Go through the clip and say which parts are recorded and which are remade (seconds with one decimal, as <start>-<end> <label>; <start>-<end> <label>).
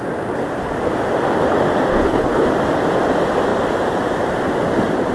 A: 0.0-1.9 recorded; 1.9-2.5 remade; 2.5-5.1 recorded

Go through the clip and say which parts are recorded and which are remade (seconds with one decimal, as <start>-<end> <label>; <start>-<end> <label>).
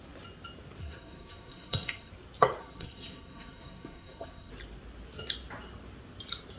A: 0.0-0.8 recorded; 0.8-2.1 remade; 2.1-2.6 recorded; 2.6-4.5 remade; 4.5-6.6 recorded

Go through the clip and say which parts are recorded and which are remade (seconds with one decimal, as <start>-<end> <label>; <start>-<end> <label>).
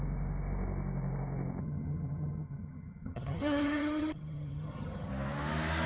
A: 0.0-1.6 recorded; 1.6-5.1 remade; 5.1-5.9 recorded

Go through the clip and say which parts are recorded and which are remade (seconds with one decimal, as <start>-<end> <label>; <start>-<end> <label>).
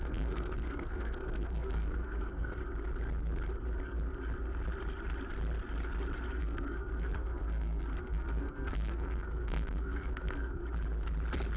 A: 0.0-2.6 remade; 2.6-6.3 recorded; 6.3-10.6 remade; 10.6-11.6 recorded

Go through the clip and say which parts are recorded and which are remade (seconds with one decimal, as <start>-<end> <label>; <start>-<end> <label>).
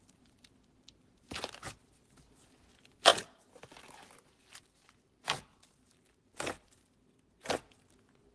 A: 0.0-8.3 recorded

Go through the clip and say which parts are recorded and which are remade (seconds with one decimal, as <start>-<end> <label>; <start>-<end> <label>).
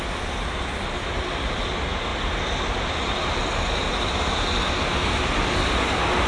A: 0.0-6.3 recorded